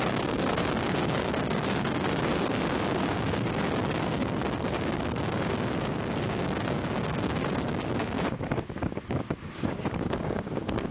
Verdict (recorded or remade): remade